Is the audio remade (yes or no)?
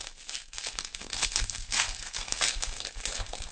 yes